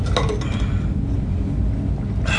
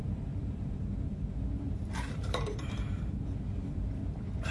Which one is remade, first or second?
second